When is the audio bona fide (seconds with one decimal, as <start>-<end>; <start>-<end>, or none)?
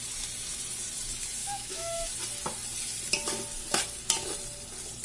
0.0-1.4; 2.1-5.0